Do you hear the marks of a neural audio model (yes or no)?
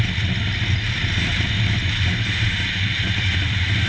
no